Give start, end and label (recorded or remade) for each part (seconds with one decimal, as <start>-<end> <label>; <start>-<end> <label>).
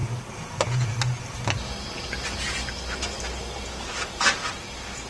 0.0-5.1 recorded